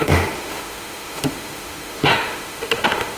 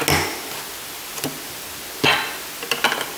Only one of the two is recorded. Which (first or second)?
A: second